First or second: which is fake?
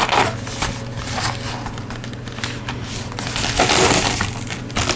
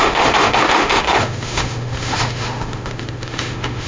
second